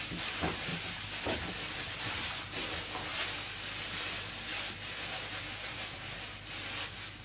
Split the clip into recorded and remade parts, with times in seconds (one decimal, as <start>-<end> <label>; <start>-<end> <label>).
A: 0.0-7.2 recorded